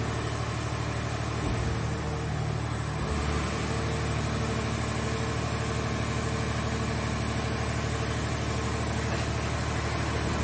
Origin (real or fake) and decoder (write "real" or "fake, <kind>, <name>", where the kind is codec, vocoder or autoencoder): real